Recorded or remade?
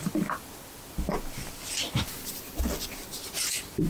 recorded